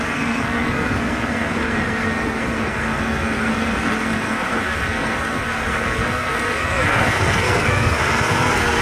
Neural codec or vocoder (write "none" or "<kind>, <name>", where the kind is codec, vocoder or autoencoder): codec, SNAC